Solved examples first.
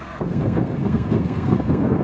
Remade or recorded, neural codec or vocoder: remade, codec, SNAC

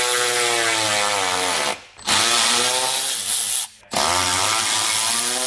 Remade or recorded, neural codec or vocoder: recorded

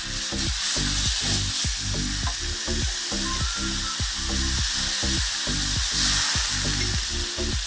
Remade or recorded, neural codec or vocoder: recorded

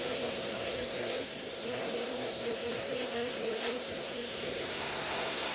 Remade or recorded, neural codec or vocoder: remade, codec, SNAC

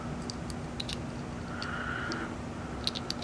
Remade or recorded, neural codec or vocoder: recorded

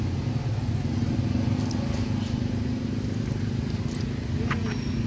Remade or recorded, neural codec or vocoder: recorded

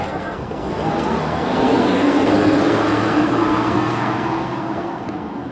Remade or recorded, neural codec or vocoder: remade, codec, SNAC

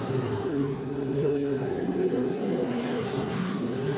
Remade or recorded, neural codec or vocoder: remade, codec, SNAC